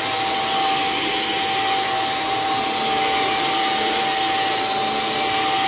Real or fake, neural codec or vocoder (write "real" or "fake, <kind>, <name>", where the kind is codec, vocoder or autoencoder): real